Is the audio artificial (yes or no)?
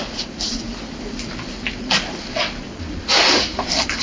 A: no